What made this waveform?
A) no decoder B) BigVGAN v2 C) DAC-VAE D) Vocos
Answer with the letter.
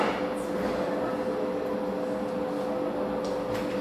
A